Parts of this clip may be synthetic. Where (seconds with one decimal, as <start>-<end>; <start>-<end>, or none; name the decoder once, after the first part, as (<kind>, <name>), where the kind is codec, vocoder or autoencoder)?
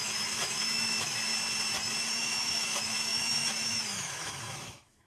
0.0-1.3 (autoencoder, DAC-VAE); 2.2-5.1